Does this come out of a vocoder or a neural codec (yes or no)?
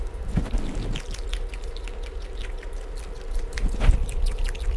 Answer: no